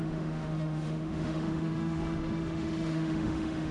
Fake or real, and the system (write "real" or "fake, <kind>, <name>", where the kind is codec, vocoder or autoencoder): fake, autoencoder, DAC-VAE